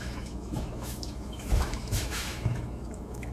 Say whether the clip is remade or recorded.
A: remade